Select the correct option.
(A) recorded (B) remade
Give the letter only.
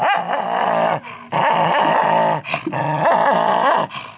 A